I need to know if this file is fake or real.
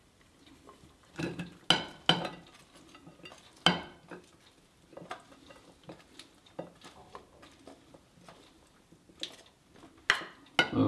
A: real